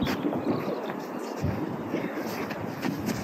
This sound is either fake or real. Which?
real